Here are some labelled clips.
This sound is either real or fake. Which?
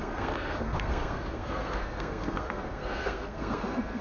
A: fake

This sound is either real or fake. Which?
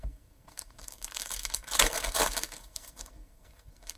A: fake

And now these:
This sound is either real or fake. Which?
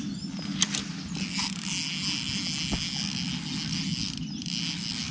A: real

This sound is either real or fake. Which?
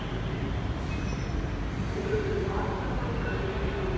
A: real